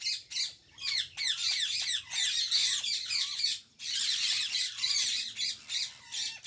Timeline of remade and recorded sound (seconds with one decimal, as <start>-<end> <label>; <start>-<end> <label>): 0.0-1.4 recorded; 1.4-2.0 remade; 2.0-2.6 recorded; 2.6-5.2 remade; 5.2-6.5 recorded